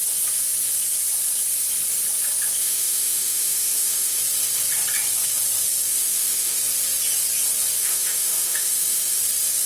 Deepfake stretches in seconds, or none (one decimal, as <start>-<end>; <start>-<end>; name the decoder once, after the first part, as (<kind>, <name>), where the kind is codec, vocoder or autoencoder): 2.6-4.2 (autoencoder, DAC-VAE); 5.9-6.6; 7.8-9.2